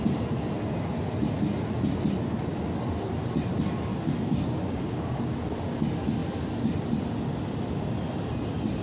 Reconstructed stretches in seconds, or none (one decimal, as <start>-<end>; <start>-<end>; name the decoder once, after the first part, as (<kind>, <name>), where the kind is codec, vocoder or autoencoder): 3.9-5.2 (codec, DAC)

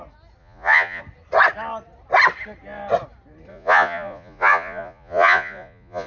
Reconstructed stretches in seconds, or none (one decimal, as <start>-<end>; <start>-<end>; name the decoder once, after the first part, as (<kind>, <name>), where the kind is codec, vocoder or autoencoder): 0.4-1.0 (vocoder, Vocos); 3.5-6.1